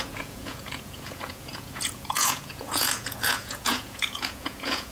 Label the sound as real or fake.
fake